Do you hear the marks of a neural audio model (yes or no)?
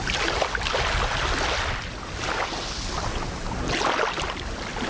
no